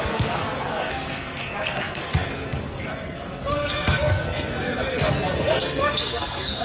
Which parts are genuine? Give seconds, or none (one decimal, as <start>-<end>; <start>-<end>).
none